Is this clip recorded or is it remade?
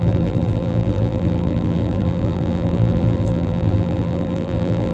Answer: remade